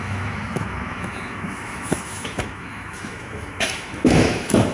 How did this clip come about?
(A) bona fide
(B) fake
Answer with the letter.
B